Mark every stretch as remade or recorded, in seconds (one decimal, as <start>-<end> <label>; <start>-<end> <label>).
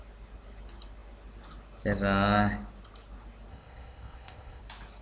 0.0-3.5 recorded; 3.5-4.6 remade; 4.6-5.0 recorded